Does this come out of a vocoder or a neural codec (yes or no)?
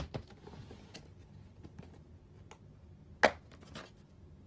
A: no